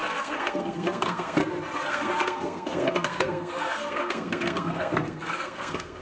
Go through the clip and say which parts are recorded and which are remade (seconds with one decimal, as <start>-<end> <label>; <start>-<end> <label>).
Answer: 0.0-1.4 remade; 1.4-1.9 recorded; 1.9-6.0 remade